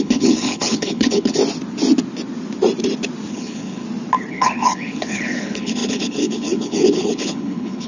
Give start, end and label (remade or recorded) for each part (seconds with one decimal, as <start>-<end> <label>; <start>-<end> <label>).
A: 0.0-1.4 remade; 1.4-3.3 recorded; 3.3-3.8 remade; 3.8-4.3 recorded; 4.3-7.9 remade